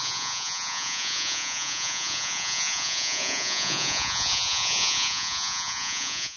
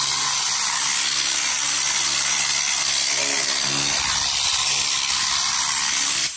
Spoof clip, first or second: first